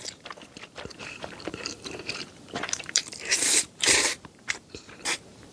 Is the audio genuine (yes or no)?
no